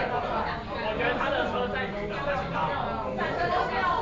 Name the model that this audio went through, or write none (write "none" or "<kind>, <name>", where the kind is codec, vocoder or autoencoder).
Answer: none